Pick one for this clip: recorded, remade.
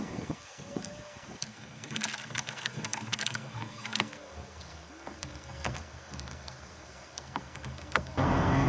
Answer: remade